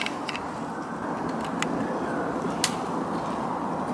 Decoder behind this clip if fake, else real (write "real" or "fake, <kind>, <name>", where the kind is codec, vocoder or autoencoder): real